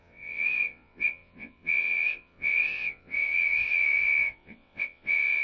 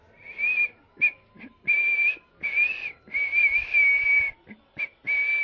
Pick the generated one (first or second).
first